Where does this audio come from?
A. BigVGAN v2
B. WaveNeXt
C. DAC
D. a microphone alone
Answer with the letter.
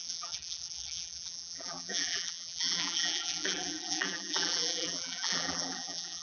A